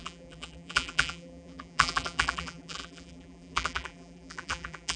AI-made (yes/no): yes